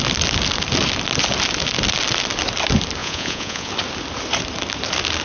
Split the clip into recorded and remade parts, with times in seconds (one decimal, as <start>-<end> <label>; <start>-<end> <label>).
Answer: 0.0-3.0 recorded; 3.0-3.7 remade; 3.7-5.2 recorded